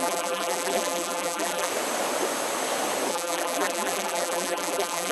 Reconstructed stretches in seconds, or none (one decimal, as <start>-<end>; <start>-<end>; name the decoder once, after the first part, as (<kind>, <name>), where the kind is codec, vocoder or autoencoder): 0.0-1.7 (vocoder, BigVGAN v2); 3.1-5.1